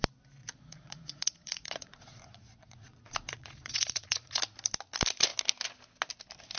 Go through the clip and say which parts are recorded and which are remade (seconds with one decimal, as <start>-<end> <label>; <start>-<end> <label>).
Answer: 0.0-0.4 recorded; 0.4-4.4 remade; 4.4-6.6 recorded